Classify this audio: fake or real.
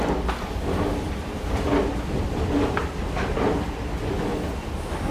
real